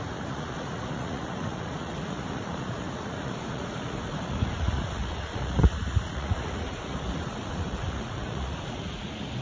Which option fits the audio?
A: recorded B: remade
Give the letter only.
B